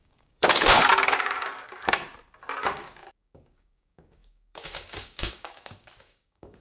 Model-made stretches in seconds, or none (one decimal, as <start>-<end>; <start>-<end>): 0.0-2.0; 2.6-6.6